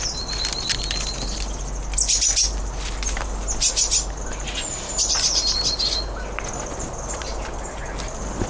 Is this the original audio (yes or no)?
yes